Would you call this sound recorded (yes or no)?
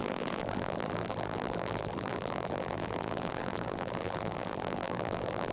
no